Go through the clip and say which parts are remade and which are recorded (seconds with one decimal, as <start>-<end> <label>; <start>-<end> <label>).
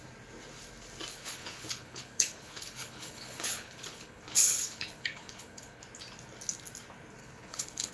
0.0-1.1 recorded; 1.1-5.8 remade; 5.8-7.2 recorded; 7.2-7.9 remade